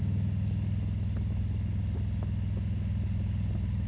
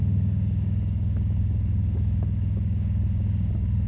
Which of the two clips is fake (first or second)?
second